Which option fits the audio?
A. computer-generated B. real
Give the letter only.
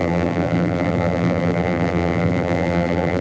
A